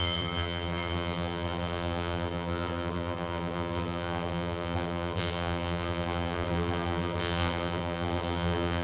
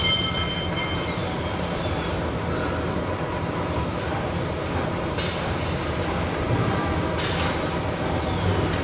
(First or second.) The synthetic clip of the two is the first